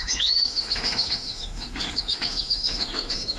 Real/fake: fake